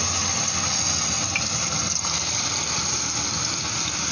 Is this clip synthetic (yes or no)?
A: no